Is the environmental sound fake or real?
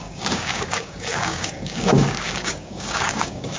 fake